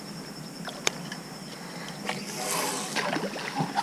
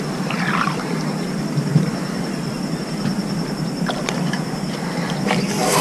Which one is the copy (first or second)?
second